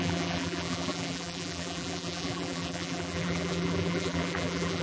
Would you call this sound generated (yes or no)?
yes